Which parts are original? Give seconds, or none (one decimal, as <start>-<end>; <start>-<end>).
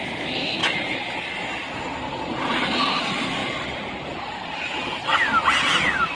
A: 0.6-3.0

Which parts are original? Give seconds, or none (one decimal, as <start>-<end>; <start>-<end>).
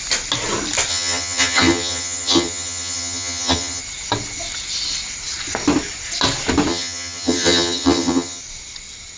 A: 0.0-0.9; 3.8-6.7; 8.4-9.2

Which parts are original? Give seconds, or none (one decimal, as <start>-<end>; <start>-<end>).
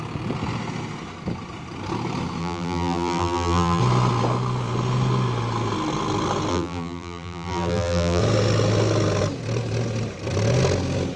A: 0.0-2.4; 3.8-6.5; 8.2-11.2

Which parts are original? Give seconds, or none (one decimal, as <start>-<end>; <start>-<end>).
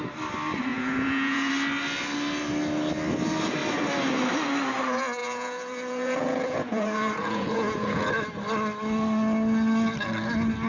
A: 0.0-0.7; 1.5-5.2; 8.1-10.7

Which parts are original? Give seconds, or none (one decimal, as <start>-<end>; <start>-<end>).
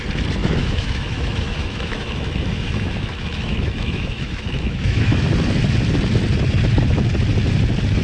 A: 0.0-0.4; 5.2-8.0